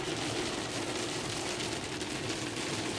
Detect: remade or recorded recorded